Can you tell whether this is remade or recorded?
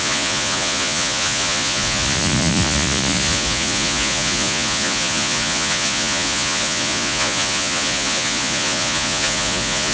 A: remade